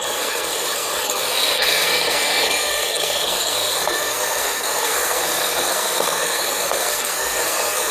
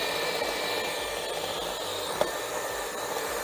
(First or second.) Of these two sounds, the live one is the second